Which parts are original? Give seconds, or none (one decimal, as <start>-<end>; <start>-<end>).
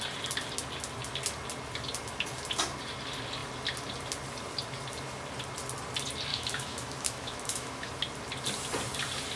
0.0-6.3; 7.9-9.4